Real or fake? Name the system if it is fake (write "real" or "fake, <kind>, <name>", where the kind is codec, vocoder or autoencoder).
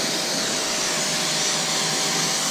real